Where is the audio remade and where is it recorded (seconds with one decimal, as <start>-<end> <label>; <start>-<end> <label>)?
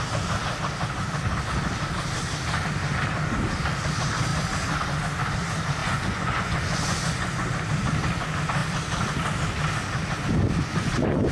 0.0-5.8 recorded; 5.8-7.5 remade; 7.5-10.7 recorded; 10.7-11.3 remade